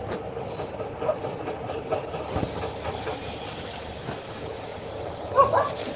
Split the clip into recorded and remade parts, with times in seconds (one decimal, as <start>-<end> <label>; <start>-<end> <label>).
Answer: 0.0-6.0 recorded